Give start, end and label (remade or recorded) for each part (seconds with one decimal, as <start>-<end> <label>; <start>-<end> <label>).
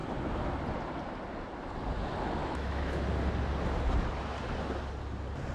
0.0-2.4 recorded; 2.4-3.0 remade; 3.0-5.5 recorded